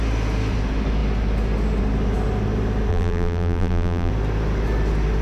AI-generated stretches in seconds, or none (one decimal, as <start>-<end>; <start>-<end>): 2.9-4.1